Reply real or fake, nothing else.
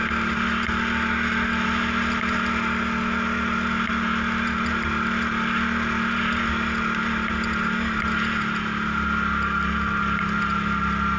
real